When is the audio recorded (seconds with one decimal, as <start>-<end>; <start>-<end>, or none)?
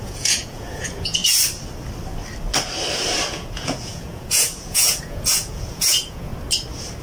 1.2-3.3; 6.3-7.0